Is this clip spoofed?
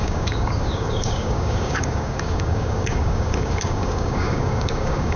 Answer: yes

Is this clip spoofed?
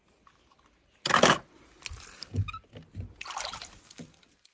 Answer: no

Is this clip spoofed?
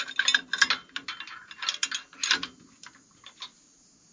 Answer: no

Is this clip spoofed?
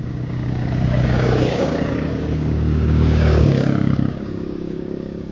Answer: yes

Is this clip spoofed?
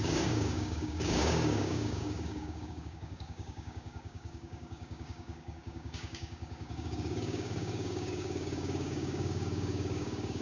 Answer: yes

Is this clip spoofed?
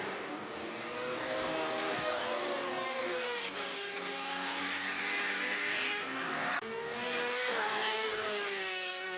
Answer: yes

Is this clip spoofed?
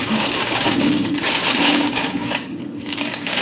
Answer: yes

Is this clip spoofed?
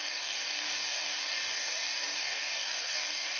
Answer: yes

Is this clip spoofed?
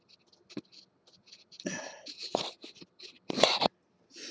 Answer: no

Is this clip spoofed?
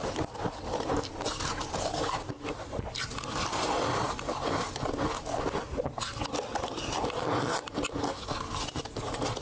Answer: no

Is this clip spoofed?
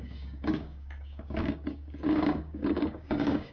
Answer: yes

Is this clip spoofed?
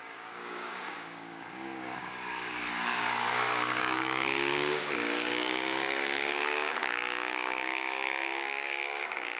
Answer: yes